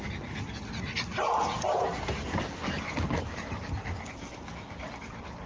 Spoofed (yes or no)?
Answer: no